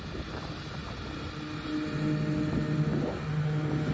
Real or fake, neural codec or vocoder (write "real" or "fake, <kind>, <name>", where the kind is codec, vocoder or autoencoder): real